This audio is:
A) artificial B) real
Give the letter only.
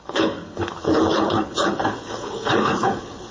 A